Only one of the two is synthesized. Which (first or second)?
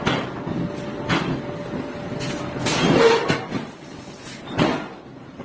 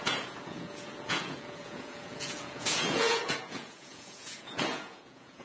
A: second